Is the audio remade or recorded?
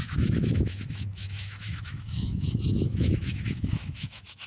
remade